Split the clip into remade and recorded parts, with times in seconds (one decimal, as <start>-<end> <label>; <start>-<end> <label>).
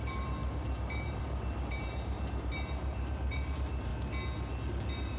0.0-3.9 remade; 3.9-4.7 recorded; 4.7-5.2 remade